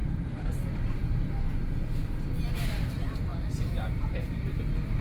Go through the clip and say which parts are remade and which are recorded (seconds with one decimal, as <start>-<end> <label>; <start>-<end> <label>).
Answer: 0.0-1.3 remade; 1.3-3.3 recorded; 3.3-4.6 remade; 4.6-5.0 recorded